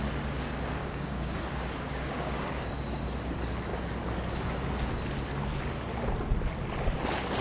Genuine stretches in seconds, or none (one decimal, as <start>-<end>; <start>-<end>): 0.0-0.8; 2.7-7.4